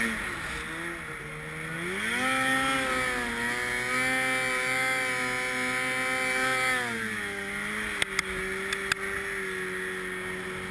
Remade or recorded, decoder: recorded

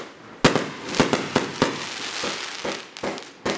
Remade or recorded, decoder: recorded